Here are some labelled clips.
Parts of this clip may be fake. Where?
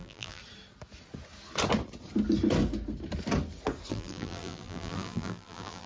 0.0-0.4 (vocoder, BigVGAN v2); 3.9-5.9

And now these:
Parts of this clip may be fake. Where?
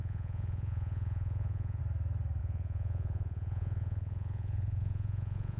0.0-1.8 (vocoder, Vocos); 2.4-5.6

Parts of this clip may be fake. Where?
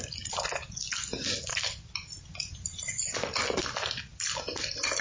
none